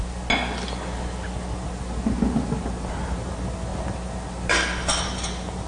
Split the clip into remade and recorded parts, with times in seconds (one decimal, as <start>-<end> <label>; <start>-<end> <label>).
0.0-5.7 recorded